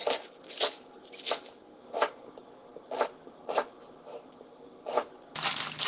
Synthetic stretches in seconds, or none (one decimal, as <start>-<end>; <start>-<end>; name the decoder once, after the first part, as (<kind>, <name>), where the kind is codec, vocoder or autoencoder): none